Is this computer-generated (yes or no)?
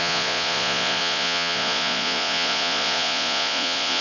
yes